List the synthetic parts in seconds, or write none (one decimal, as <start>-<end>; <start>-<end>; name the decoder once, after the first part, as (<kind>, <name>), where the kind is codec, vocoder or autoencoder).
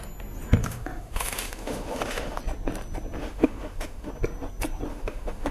0.6-2.4 (autoencoder, DAC-VAE); 3.2-4.1; 4.9-5.5